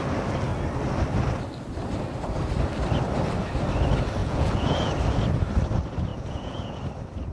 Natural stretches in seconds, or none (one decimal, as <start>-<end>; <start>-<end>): 0.0-4.2; 4.9-6.1; 6.8-7.3